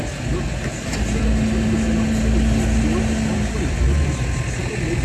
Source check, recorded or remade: recorded